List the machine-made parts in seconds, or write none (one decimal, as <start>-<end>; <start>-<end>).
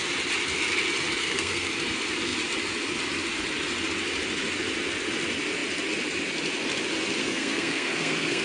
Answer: 1.2-1.7; 7.2-8.4